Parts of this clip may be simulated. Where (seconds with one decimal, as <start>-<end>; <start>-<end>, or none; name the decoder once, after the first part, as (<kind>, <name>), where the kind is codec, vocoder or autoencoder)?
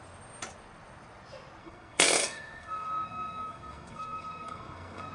1.6-5.1 (codec, SNAC)